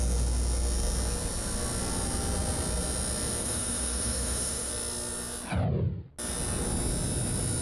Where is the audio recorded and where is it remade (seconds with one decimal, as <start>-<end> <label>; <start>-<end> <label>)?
0.0-3.4 recorded; 3.4-4.7 remade; 4.7-7.6 recorded